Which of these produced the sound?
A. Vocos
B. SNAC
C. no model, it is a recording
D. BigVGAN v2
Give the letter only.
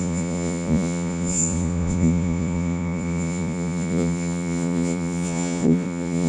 A